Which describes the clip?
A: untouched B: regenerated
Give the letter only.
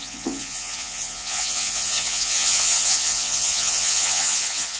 B